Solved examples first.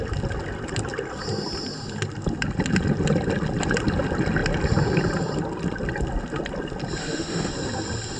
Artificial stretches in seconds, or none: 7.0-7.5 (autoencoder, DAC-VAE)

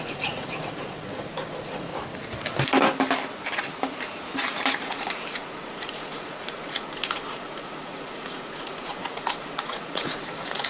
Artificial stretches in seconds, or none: 0.0-1.9 (vocoder, Vocos); 4.8-10.7

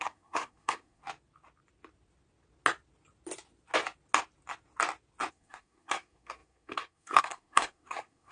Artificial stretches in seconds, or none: 0.0-1.0 (codec, SNAC); 5.3-8.3

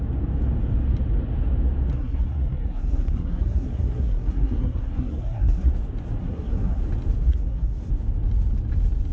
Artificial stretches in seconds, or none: 1.9-5.7 (codec, SNAC); 6.2-6.8; 7.3-7.9

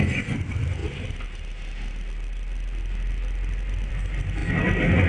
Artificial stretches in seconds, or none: none

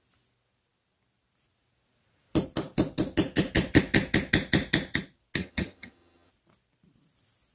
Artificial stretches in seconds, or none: 5.4-6.3 (vocoder, HiFi-GAN)

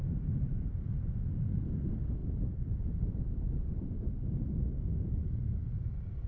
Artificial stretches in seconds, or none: 0.0-1.2 (vocoder, BigVGAN v2); 4.9-6.3